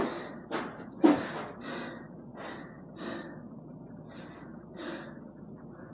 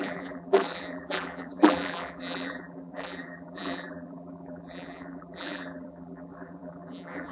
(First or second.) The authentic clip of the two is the first